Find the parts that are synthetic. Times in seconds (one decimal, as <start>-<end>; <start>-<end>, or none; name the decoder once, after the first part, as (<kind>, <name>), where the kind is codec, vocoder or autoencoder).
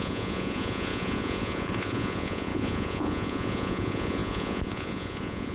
0.0-5.5 (vocoder, Vocos)